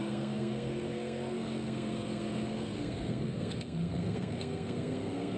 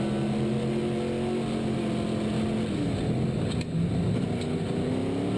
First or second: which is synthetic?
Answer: first